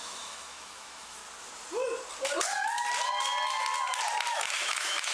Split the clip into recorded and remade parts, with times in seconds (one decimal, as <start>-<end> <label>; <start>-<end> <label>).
0.0-1.2 remade; 1.2-4.3 recorded; 4.3-5.1 remade